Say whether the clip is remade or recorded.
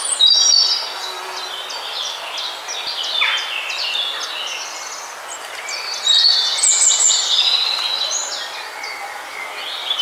recorded